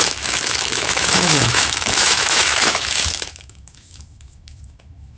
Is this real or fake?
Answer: fake